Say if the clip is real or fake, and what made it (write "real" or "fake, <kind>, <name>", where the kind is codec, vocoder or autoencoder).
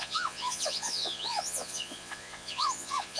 fake, vocoder, Vocos